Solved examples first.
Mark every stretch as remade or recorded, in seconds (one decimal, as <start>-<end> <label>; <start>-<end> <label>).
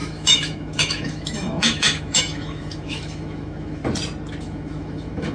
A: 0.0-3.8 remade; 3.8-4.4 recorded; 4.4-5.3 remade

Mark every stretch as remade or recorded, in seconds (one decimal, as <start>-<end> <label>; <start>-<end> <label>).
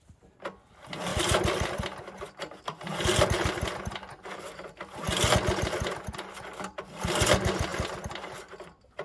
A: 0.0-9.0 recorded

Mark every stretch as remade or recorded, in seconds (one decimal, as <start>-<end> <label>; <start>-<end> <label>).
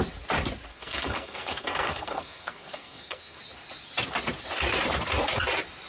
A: 0.0-0.7 recorded; 0.7-3.4 remade; 3.4-5.9 recorded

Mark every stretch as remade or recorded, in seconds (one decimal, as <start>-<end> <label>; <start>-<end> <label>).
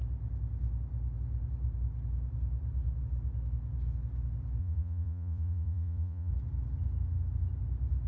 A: 0.0-4.6 recorded; 4.6-6.3 remade; 6.3-8.1 recorded